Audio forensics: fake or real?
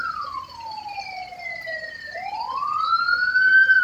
real